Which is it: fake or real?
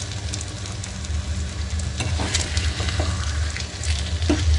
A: real